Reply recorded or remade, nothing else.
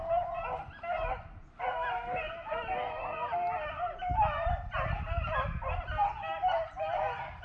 recorded